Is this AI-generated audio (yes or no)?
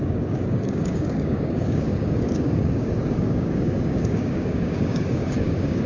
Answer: yes